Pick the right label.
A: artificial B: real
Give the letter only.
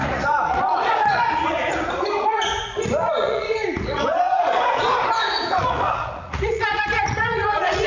A